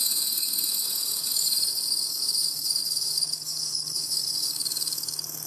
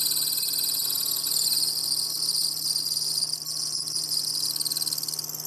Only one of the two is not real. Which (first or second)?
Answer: first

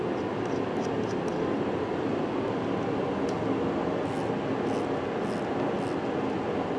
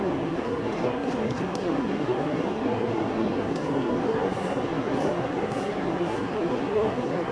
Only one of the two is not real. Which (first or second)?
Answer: second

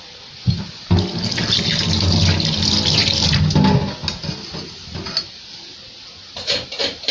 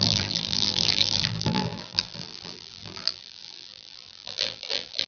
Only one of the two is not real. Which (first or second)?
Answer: second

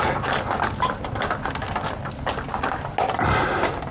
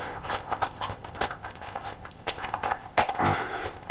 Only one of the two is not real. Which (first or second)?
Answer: second